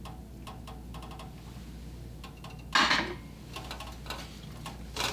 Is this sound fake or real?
real